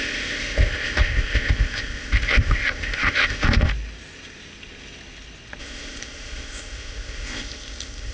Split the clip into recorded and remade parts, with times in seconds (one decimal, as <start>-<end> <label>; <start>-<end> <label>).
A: 0.0-3.7 remade; 3.7-5.6 recorded; 5.6-8.1 remade